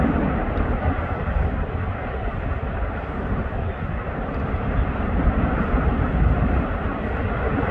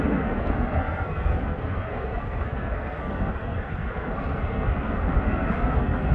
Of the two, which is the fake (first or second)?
second